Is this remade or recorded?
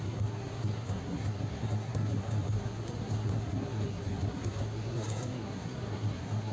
remade